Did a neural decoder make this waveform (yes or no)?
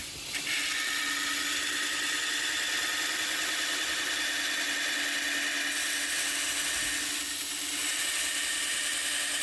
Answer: no